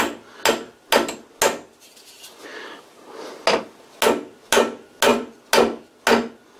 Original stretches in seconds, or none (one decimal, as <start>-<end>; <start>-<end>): 0.0-6.6